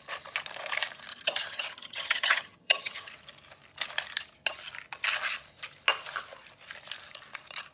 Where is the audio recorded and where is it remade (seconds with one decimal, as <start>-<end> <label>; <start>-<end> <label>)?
0.0-1.1 recorded; 1.1-3.1 remade; 3.1-7.7 recorded